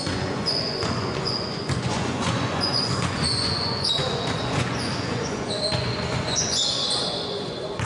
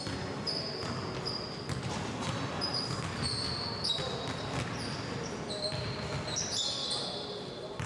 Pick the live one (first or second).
second